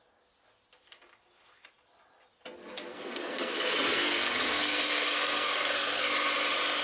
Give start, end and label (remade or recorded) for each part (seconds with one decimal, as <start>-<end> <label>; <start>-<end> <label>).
0.0-2.9 recorded; 2.9-6.1 remade; 6.1-6.8 recorded